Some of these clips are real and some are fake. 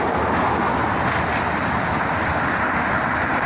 real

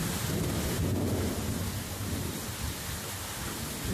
real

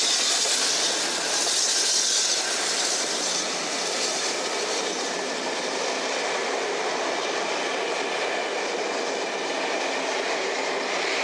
real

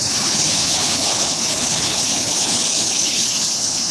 fake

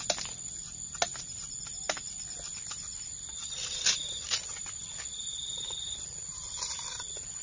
real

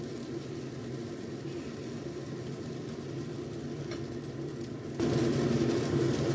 real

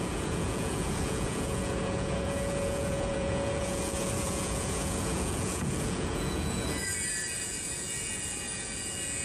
fake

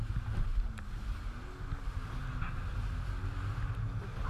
real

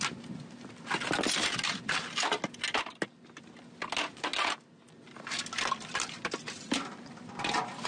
real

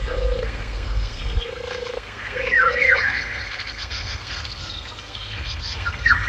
fake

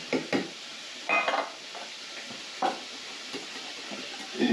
real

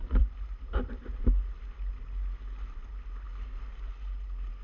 real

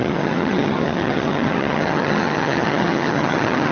fake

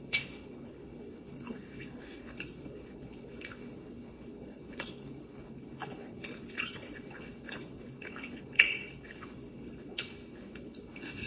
fake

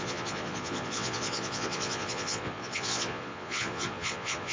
fake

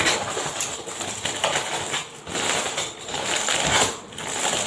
real